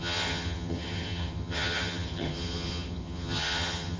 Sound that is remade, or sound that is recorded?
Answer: remade